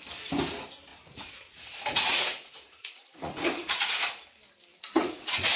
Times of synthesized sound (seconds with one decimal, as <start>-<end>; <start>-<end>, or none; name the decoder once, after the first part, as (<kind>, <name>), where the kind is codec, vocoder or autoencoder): 0.9-3.7 (vocoder, Vocos); 4.7-5.6